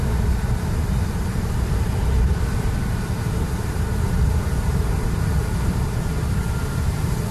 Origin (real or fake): fake